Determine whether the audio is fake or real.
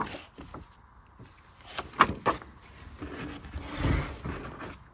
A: real